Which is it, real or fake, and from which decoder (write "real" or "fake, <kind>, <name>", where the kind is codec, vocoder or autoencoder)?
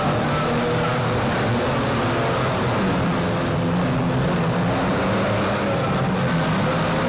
real